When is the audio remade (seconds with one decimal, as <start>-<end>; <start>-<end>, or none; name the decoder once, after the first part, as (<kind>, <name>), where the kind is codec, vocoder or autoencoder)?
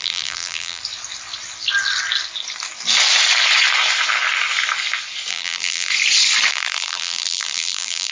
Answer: 0.0-0.8 (vocoder, BigVGAN v2); 5.3-5.9; 6.5-8.1